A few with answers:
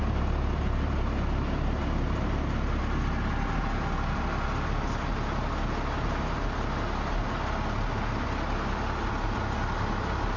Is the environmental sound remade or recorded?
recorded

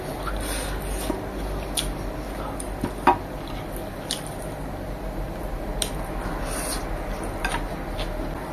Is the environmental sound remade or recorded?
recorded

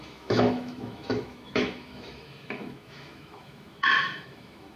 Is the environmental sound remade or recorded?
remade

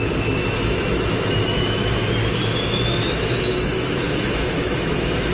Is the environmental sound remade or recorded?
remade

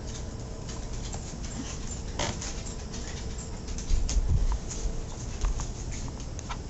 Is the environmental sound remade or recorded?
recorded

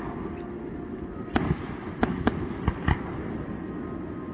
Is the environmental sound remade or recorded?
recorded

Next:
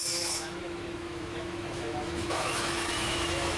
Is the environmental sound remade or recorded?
remade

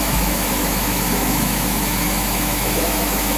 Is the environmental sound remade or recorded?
remade